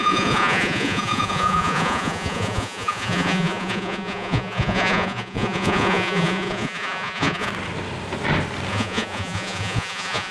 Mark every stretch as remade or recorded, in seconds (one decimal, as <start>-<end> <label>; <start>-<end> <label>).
0.0-7.5 remade; 7.5-8.7 recorded; 8.7-10.3 remade